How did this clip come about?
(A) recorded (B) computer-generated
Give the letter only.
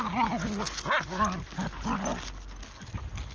A